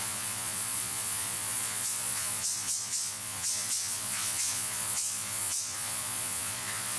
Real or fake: fake